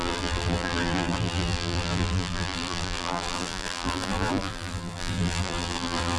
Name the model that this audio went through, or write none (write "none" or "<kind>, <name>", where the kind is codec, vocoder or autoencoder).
vocoder, BigVGAN v2